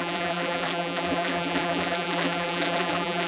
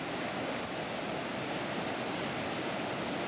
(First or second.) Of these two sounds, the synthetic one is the first